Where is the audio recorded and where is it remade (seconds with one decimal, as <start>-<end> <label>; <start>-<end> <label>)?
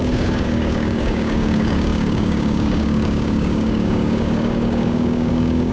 0.0-5.7 remade